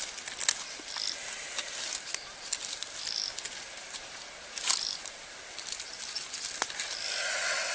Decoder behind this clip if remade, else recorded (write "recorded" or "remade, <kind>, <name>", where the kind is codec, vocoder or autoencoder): recorded